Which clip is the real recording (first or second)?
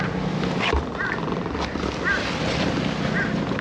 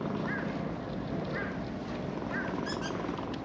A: first